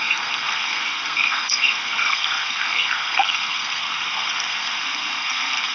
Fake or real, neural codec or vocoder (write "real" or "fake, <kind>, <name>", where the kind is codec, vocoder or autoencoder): fake, codec, SNAC